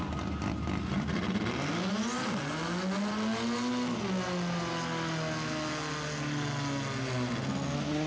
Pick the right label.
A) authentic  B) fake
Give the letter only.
A